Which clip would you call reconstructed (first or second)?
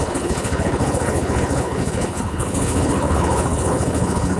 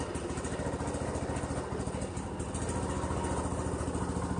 first